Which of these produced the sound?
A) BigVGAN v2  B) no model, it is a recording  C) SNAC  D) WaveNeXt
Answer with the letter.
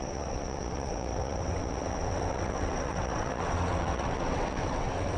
D